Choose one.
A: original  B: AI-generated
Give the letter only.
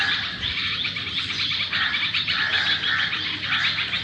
A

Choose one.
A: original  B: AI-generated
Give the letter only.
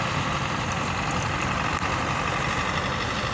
A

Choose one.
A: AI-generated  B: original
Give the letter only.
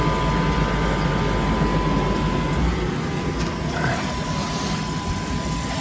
B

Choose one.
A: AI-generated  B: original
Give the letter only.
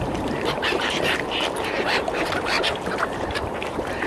A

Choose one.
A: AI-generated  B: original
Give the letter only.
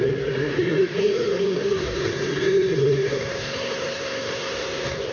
A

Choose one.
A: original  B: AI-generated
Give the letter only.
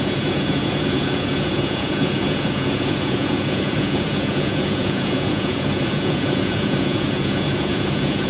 B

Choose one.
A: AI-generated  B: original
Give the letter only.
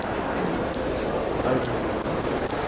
B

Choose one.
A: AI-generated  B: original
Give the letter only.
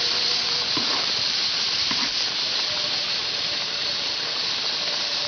A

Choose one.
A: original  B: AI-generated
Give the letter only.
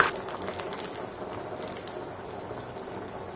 A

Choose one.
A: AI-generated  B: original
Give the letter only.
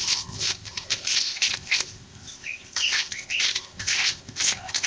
A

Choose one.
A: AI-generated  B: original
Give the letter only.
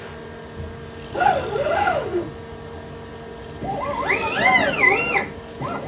B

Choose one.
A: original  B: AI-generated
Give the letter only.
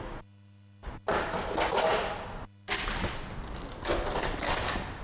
A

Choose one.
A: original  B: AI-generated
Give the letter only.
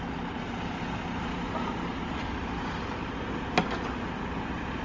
A